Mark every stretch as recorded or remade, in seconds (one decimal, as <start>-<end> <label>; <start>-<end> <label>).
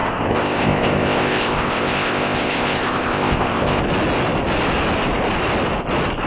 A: 0.0-3.8 remade; 3.8-6.3 recorded